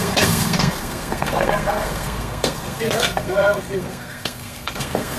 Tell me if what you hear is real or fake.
fake